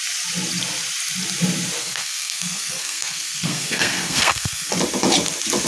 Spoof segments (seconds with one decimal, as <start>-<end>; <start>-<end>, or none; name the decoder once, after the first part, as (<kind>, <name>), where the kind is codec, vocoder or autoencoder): 1.8-4.7 (codec, SNAC)